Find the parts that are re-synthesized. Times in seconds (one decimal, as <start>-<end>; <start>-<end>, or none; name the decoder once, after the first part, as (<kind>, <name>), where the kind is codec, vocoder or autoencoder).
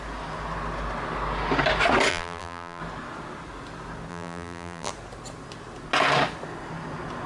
2.1-2.8 (vocoder, BigVGAN v2); 4.1-4.9